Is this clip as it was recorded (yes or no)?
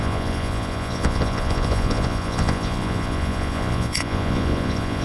no